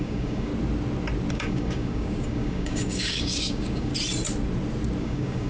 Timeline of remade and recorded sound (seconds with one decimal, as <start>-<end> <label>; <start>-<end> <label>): 0.0-0.5 remade; 0.5-1.3 recorded; 1.3-3.9 remade; 3.9-5.0 recorded; 5.0-5.5 remade